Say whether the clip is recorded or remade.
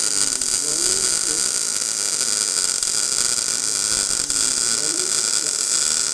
recorded